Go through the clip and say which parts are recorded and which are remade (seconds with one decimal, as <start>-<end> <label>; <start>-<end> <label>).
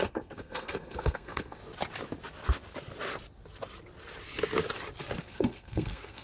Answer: 0.0-1.6 remade; 1.6-5.2 recorded; 5.2-6.2 remade